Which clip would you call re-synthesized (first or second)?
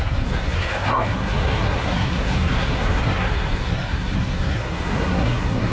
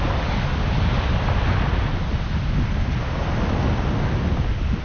first